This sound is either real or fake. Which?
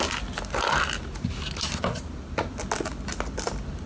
real